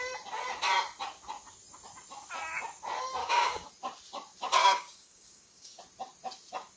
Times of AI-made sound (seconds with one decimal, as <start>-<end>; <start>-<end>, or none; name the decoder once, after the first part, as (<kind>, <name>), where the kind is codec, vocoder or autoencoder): 3.2-3.7 (codec, DAC); 4.6-5.8